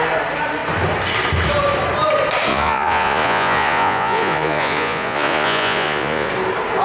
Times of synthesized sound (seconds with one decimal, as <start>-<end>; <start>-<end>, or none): 2.5-6.3